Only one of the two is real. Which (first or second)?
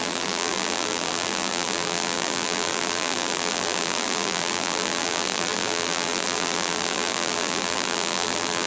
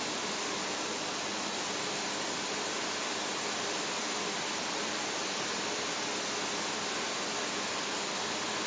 second